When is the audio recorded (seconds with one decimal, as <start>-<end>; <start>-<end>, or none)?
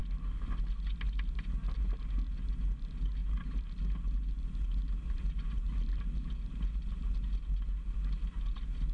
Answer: 0.0-8.9